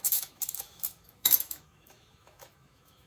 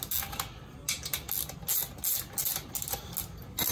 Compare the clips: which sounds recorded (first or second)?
second